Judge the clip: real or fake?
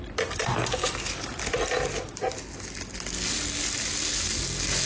real